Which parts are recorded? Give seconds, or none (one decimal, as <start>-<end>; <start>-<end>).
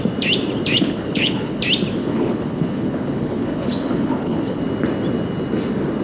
0.0-0.8; 1.6-2.0; 4.6-6.0